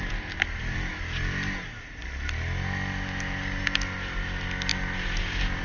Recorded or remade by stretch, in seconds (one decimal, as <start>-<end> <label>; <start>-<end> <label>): 0.0-5.6 recorded